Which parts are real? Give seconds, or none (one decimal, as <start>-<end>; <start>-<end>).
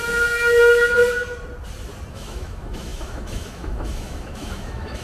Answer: 1.0-2.1